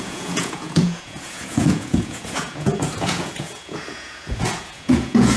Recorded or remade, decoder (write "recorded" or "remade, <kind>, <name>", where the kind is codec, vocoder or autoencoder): remade, vocoder, Vocos